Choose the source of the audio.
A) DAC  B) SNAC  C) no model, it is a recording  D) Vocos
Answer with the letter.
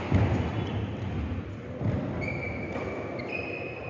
C